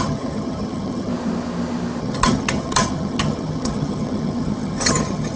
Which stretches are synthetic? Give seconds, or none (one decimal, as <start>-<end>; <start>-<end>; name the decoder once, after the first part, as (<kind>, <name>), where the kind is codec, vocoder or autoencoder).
0.0-1.1 (vocoder, HiFi-GAN); 2.0-5.4